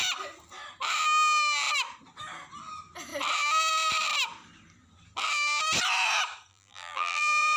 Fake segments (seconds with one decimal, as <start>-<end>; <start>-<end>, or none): 6.5-7.6